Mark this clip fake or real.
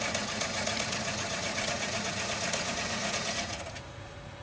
fake